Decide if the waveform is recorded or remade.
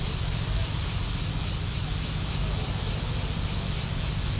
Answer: recorded